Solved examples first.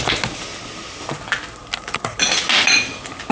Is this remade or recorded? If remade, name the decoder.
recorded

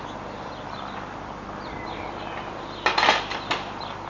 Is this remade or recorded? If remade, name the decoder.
recorded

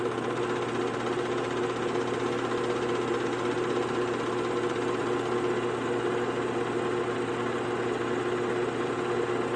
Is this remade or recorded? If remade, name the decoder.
recorded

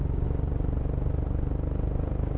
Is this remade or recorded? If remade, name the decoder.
recorded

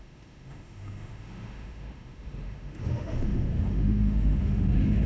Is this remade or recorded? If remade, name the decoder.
remade, autoencoder, DAC-VAE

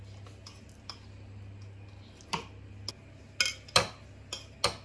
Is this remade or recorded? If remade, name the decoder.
recorded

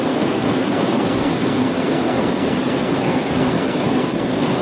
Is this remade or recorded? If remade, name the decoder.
remade, codec, SNAC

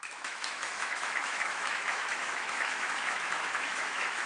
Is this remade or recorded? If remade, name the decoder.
remade, autoencoder, DAC-VAE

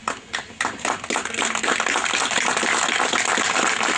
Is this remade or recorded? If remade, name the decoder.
recorded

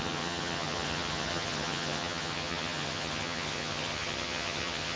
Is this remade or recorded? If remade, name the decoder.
remade, vocoder, HiFi-GAN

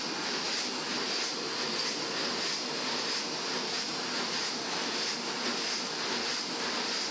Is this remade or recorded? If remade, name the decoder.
recorded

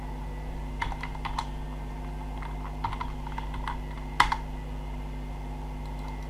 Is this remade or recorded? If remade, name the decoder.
recorded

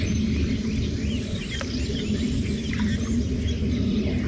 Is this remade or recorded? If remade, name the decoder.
recorded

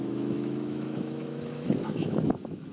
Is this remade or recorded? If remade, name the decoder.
remade, autoencoder, DAC-VAE